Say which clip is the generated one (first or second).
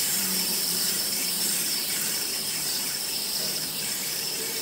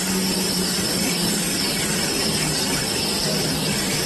first